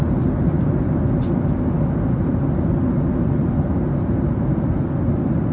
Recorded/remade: recorded